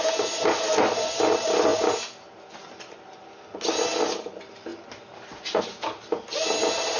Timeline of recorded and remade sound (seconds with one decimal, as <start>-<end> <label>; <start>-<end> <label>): 0.0-7.0 recorded